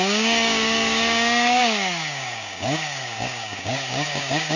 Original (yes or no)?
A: no